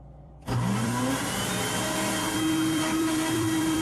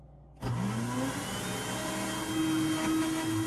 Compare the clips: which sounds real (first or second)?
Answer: second